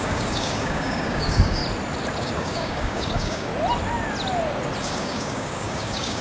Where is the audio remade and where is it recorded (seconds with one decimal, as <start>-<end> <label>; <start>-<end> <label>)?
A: 0.0-1.6 remade; 1.6-2.2 recorded; 2.2-3.5 remade; 3.5-4.8 recorded; 4.8-6.2 remade